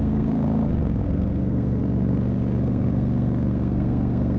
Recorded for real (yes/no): no